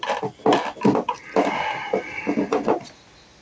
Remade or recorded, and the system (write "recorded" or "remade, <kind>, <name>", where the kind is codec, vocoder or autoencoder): recorded